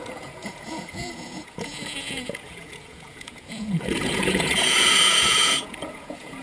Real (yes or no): no